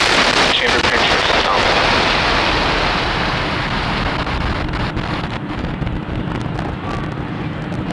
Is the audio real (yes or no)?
yes